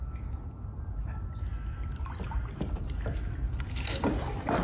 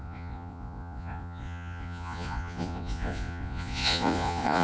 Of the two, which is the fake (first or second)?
second